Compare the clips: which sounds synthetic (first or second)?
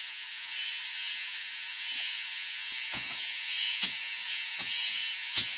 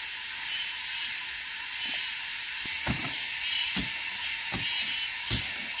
first